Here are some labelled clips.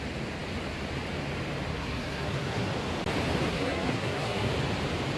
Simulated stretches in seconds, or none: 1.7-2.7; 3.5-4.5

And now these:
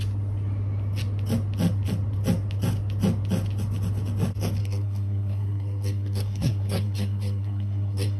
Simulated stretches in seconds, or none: 4.6-8.2

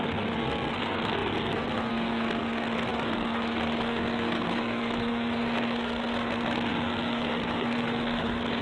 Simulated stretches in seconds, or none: 0.0-8.6